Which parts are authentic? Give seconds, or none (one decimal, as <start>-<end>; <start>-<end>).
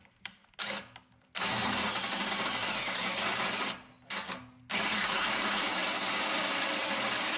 0.4-4.8; 5.8-7.4